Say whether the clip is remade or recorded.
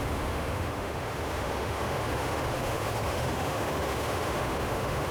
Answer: remade